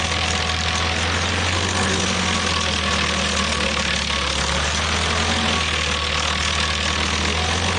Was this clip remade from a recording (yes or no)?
no